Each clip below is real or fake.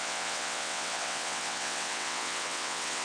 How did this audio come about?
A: fake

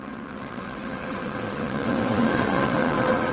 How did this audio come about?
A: fake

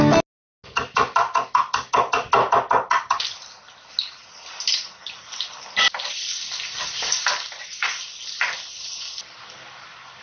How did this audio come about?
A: real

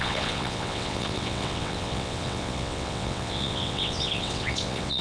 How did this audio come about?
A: fake